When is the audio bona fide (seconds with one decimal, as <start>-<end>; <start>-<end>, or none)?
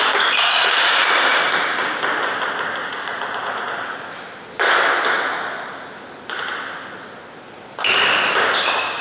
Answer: 0.0-2.8; 3.9-9.0